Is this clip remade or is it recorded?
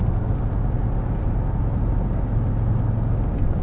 recorded